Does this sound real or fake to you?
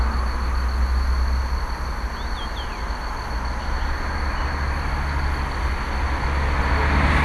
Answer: real